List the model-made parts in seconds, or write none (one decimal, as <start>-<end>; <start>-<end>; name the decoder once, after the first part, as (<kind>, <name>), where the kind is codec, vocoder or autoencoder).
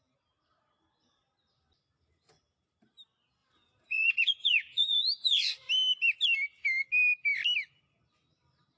3.4-5.7 (vocoder, Vocos)